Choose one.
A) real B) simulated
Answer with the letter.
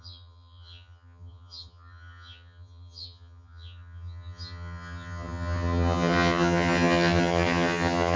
B